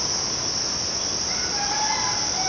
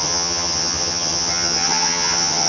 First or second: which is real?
first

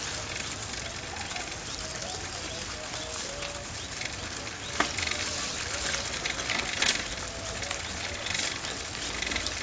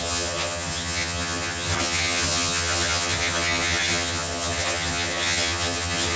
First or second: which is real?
first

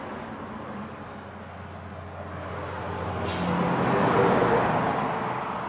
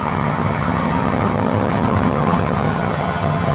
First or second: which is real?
first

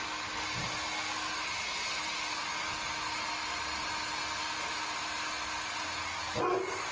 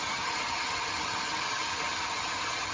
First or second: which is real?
first